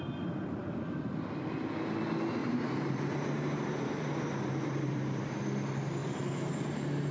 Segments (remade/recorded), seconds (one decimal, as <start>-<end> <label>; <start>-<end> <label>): 0.0-2.4 recorded; 2.4-5.3 remade; 5.3-6.0 recorded; 6.0-7.1 remade